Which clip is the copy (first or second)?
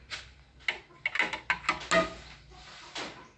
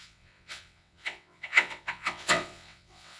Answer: second